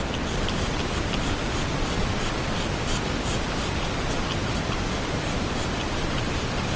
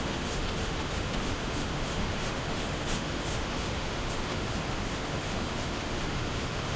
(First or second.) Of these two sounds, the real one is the first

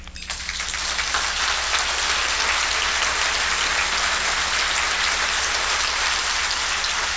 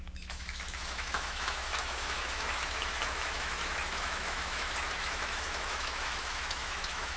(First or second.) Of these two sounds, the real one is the first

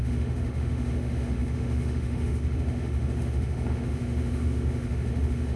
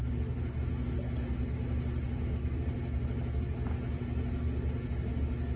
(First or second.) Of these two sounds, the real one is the second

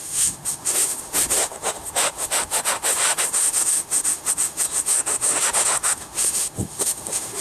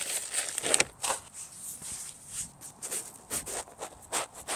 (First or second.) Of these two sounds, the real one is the second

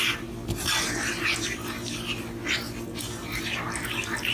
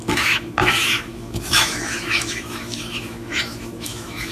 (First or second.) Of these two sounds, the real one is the first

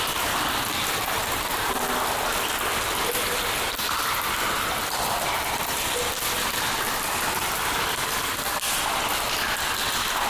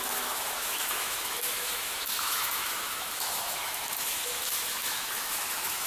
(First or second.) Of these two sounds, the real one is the first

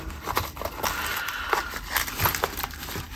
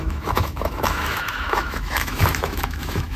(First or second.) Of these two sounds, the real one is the first